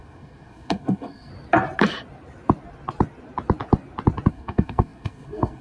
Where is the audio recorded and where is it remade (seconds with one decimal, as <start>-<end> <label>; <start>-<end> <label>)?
0.0-1.3 remade; 1.3-4.3 recorded; 4.3-5.6 remade